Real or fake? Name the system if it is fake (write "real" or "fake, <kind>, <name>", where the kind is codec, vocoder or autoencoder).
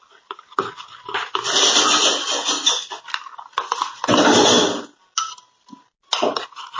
real